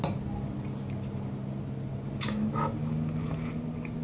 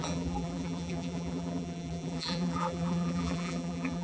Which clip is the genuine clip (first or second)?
first